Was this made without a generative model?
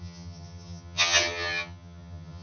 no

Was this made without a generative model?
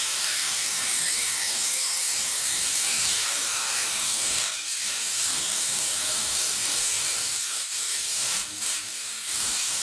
no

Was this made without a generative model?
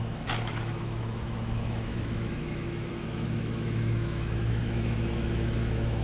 no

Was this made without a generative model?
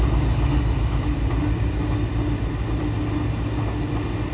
yes